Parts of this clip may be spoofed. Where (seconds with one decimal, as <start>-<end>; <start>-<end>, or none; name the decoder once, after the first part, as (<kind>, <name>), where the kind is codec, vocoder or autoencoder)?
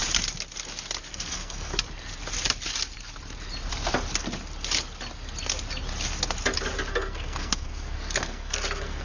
1.1-1.7 (codec, SNAC); 6.9-9.0